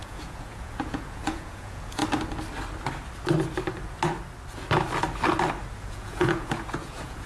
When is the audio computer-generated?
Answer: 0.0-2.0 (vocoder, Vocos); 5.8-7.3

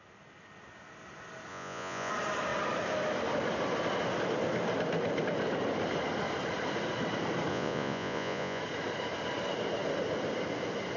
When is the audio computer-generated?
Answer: 1.5-2.1 (vocoder, Vocos); 7.5-8.6

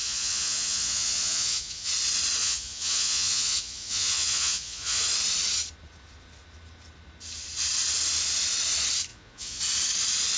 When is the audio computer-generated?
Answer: 0.0-1.9 (vocoder, Vocos); 2.4-5.0; 9.1-9.6

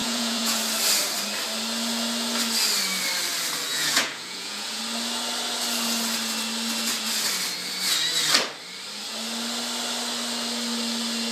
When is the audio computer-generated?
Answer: 0.0-0.6 (vocoder, Vocos); 3.7-4.8

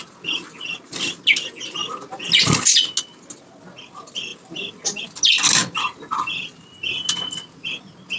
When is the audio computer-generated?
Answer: none